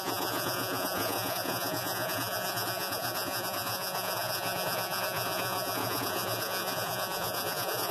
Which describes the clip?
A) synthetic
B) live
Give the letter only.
A